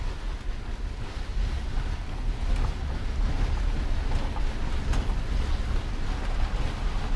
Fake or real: real